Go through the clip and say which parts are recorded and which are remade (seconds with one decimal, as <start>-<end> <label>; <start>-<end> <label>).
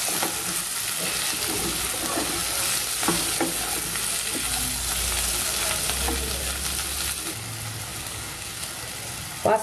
0.0-7.9 recorded; 7.9-8.7 remade; 8.7-9.6 recorded